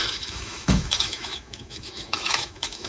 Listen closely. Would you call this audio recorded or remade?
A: remade